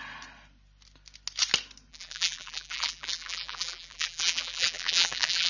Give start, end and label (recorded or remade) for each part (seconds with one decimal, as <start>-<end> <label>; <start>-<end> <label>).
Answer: 0.0-1.9 recorded; 1.9-5.5 remade